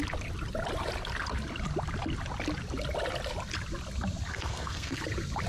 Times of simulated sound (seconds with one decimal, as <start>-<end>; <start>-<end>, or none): 4.3-5.0